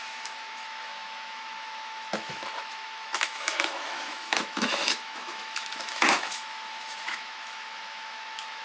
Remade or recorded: remade